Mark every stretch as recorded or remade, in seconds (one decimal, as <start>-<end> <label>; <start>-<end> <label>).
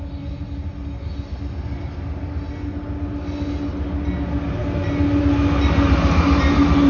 0.0-6.9 recorded